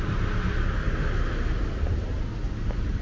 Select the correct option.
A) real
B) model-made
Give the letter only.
A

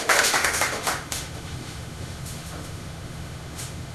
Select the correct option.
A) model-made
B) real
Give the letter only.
A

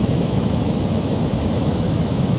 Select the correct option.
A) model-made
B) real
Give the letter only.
A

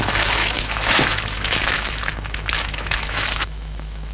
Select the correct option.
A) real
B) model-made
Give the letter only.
B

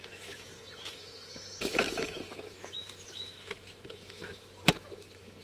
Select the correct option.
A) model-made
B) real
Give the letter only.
A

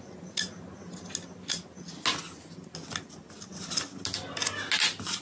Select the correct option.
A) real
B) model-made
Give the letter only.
A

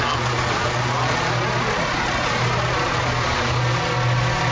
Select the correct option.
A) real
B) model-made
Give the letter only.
A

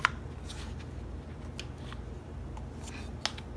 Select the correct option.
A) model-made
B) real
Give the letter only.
B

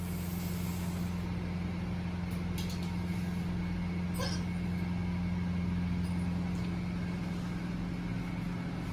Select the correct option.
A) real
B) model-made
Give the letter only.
A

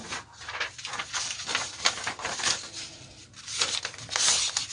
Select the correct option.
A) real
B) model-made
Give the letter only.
A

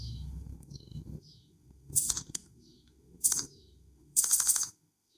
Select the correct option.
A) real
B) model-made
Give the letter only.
B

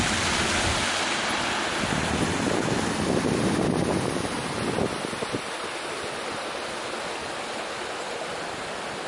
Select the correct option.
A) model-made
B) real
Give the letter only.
B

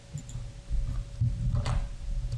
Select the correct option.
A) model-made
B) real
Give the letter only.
B